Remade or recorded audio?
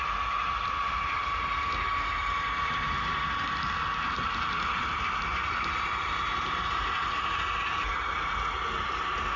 recorded